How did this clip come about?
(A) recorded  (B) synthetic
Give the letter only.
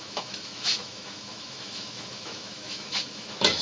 B